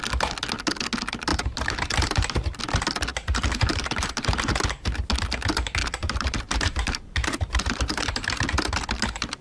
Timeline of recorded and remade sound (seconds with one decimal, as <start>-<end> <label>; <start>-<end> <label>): 0.0-1.3 recorded; 1.3-2.6 remade; 2.6-3.1 recorded; 3.1-4.5 remade; 4.5-5.8 recorded; 5.8-8.3 remade; 8.3-9.4 recorded